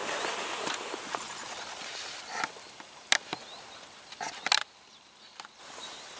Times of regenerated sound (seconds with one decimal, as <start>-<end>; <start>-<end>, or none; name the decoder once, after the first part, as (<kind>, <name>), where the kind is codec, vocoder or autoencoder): 4.6-5.6 (vocoder, BigVGAN v2)